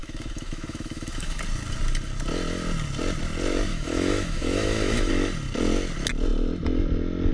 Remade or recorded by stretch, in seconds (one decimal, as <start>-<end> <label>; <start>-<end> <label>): 0.0-1.4 remade; 1.4-3.7 recorded; 3.7-5.1 remade; 5.1-7.3 recorded